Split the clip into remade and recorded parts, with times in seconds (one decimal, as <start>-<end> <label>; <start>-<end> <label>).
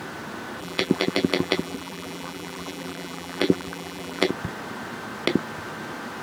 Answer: 0.0-0.6 recorded; 0.6-4.3 remade; 4.3-6.2 recorded